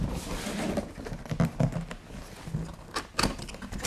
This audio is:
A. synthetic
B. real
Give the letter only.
B